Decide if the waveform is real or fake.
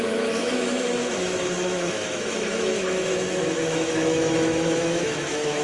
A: fake